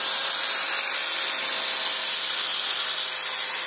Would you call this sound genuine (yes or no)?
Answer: yes